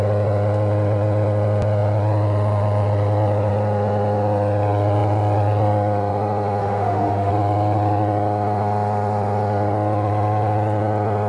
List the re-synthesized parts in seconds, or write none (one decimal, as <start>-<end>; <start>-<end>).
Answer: 6.6-7.3